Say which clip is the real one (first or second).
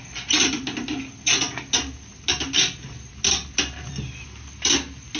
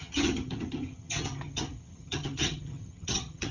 first